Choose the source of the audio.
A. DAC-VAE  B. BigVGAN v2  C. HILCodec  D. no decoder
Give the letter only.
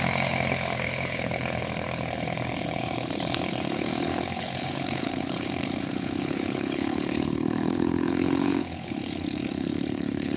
C